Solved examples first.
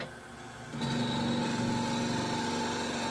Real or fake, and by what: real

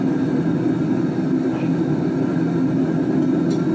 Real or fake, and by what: real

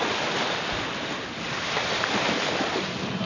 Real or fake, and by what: real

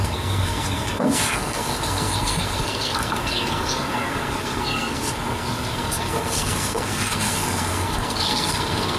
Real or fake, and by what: fake, codec, SNAC